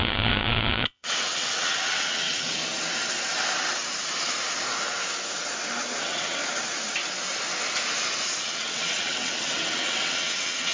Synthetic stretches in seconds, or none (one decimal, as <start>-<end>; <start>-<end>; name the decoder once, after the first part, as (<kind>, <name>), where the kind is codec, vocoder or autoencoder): 0.0-2.6 (vocoder, WaveNeXt); 6.0-6.4; 8.4-10.7